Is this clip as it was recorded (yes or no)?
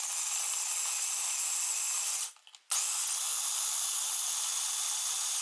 yes